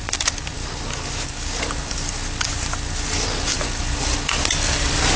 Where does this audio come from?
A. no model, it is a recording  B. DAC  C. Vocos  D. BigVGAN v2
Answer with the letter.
D